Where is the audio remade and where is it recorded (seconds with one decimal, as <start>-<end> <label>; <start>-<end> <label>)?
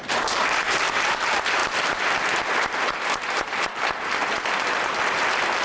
0.0-5.6 recorded